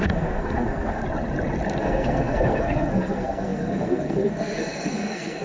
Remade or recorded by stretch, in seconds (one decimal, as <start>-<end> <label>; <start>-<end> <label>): 0.0-1.0 remade; 1.0-1.8 recorded; 1.8-5.4 remade